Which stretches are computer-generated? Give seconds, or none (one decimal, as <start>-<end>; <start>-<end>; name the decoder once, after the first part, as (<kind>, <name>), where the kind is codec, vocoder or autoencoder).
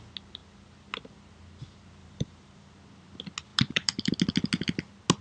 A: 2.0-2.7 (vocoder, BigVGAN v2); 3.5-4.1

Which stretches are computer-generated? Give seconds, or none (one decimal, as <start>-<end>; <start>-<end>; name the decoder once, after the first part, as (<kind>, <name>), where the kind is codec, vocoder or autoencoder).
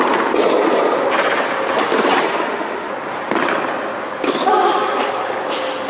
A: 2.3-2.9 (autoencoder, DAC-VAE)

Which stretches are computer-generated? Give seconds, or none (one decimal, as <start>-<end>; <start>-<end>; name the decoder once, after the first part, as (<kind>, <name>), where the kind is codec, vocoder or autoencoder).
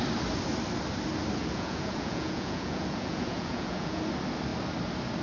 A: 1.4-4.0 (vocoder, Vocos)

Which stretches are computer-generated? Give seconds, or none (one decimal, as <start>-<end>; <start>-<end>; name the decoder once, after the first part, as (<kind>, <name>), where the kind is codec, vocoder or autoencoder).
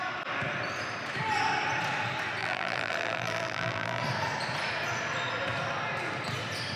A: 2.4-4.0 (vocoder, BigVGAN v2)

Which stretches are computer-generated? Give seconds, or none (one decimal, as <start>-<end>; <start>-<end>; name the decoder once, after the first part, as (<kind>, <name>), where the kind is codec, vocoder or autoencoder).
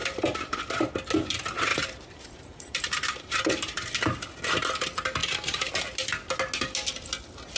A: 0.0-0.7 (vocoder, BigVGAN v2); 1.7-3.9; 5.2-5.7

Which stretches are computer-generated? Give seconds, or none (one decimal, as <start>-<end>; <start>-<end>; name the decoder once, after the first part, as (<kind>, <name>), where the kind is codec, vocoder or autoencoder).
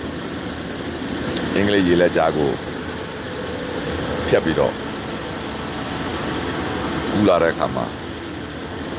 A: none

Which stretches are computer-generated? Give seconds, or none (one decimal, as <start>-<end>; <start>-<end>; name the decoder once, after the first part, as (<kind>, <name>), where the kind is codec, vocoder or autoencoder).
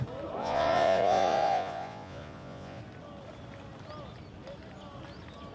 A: 0.4-2.8 (vocoder, Vocos)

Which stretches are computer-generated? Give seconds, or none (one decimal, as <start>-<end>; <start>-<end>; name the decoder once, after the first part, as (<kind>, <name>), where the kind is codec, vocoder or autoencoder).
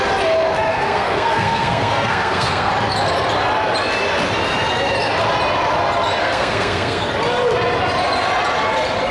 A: 0.7-2.7 (codec, SNAC); 6.2-7.1